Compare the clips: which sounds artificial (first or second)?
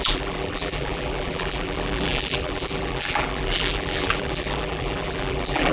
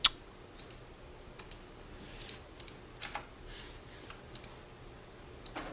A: first